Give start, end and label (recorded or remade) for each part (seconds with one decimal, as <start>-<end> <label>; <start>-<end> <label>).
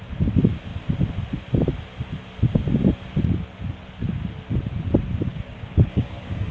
0.0-5.3 recorded; 5.3-6.5 remade